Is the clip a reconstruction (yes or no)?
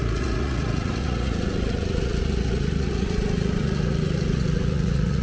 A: yes